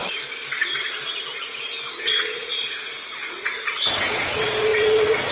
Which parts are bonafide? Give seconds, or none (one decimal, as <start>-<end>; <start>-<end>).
0.0-2.0; 2.7-4.1